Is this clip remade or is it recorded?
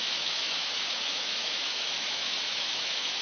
remade